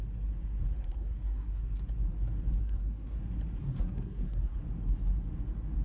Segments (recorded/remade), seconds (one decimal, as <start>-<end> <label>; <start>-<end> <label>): 0.0-0.8 recorded; 0.8-1.6 remade; 1.6-2.6 recorded; 2.6-3.2 remade; 3.2-3.6 recorded; 3.6-4.6 remade; 4.6-5.8 recorded